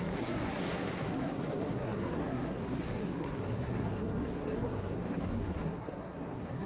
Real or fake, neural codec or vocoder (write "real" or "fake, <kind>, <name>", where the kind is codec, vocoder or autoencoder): fake, codec, SNAC